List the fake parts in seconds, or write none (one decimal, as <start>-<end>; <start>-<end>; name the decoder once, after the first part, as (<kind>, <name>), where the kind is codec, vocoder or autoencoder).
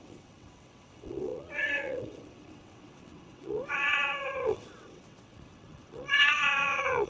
0.0-7.1 (vocoder, WaveNeXt)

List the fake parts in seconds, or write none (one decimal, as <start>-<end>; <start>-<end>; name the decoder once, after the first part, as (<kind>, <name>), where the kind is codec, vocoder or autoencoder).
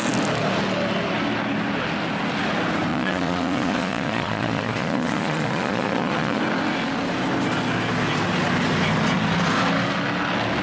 2.9-6.4 (vocoder, Vocos)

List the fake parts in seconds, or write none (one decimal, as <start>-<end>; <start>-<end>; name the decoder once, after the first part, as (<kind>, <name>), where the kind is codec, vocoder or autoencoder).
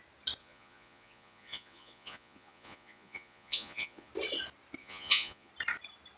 0.4-4.1 (vocoder, Vocos); 4.8-5.5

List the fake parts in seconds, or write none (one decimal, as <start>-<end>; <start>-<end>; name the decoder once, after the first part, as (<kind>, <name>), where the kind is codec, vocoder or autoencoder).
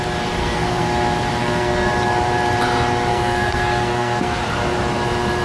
0.4-0.9 (codec, SNAC); 1.4-1.9; 3.1-4.4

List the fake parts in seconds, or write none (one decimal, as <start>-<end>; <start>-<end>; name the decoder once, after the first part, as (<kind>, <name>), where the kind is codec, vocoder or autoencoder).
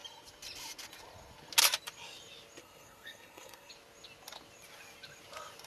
2.6-3.7 (codec, SNAC)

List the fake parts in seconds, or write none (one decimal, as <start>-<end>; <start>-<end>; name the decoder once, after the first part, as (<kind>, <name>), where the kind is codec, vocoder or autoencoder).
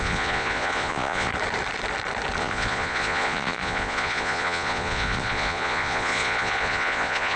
0.0-1.3 (vocoder, Vocos); 2.4-7.4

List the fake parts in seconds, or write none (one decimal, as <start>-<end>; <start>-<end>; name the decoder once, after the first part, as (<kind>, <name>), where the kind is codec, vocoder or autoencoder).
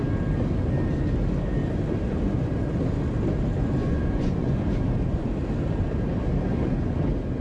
3.6-4.7 (vocoder, Vocos); 6.5-7.0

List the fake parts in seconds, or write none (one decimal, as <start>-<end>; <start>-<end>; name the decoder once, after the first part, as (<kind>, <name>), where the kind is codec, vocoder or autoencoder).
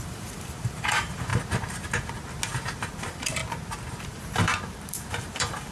0.0-1.3 (vocoder, BigVGAN v2); 2.9-3.4; 4.0-4.5; 5.1-5.7